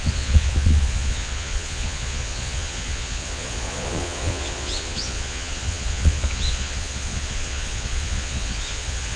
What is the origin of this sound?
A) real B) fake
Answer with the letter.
B